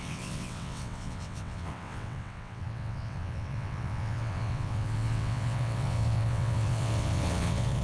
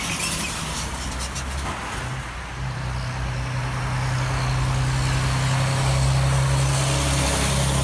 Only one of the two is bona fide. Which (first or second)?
second